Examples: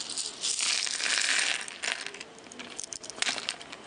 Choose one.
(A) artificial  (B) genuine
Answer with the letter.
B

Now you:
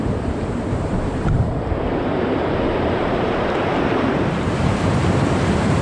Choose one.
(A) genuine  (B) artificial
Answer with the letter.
B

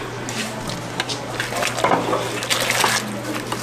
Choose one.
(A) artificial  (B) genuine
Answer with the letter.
B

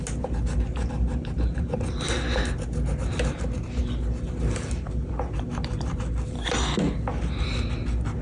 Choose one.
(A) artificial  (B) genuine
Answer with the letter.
B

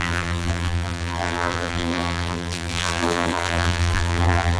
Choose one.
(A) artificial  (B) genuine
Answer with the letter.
A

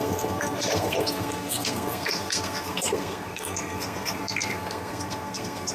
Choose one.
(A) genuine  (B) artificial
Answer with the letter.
B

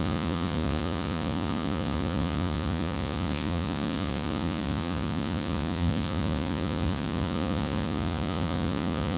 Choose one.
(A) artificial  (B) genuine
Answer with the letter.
A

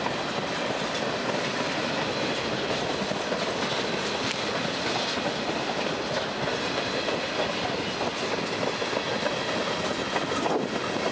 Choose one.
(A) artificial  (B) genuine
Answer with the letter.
B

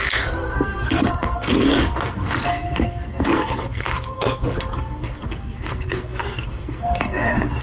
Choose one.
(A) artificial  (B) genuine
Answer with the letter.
A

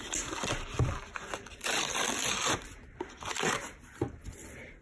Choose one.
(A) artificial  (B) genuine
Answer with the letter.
B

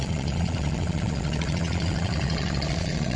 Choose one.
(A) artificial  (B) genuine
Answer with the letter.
A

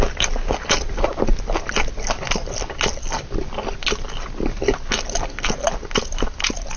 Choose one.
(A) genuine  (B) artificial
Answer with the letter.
A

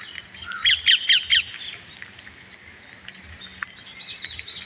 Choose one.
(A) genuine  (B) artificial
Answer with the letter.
A